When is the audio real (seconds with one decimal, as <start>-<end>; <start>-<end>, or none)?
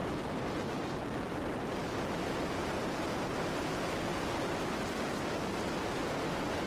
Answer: 0.0-1.8; 2.3-6.7